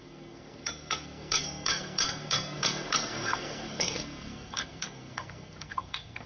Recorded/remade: remade